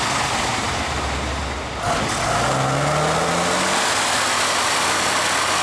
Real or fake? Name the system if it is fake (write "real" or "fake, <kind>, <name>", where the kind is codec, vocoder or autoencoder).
real